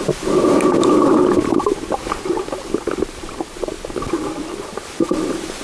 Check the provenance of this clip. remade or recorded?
recorded